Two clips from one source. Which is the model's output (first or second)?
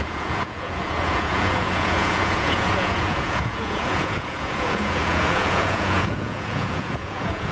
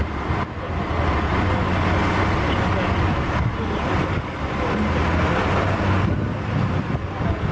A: first